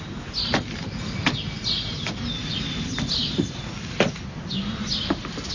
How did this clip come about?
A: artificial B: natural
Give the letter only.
B